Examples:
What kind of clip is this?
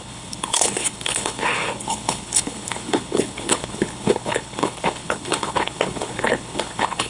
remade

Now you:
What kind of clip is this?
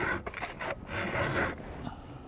recorded